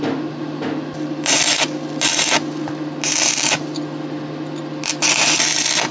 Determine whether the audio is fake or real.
real